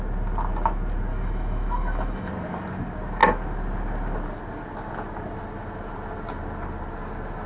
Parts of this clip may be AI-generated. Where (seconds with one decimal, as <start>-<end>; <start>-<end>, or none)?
1.1-2.3